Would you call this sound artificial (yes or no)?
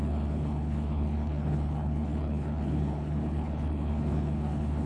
yes